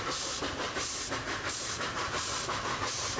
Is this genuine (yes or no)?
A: no